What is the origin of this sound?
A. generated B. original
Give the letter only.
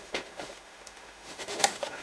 A